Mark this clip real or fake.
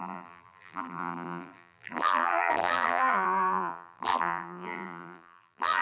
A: fake